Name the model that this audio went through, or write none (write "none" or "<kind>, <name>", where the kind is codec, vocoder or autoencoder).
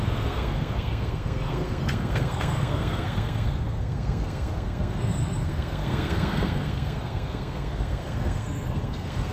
codec, SNAC